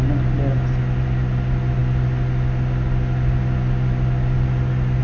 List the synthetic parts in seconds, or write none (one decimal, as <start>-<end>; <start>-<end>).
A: none